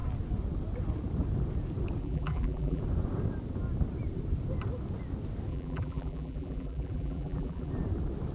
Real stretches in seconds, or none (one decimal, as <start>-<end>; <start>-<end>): 0.0-2.0; 2.8-5.5; 7.7-8.3